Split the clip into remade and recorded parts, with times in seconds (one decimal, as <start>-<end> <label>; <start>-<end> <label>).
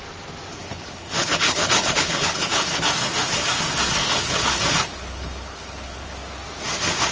0.0-0.5 recorded; 0.5-2.8 remade; 2.8-4.0 recorded; 4.0-4.6 remade; 4.6-5.0 recorded; 5.0-6.1 remade; 6.1-7.1 recorded